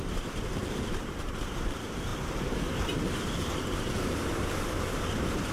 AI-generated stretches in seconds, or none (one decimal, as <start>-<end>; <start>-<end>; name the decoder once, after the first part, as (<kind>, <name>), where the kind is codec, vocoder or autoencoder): 0.0-5.5 (vocoder, BigVGAN v2)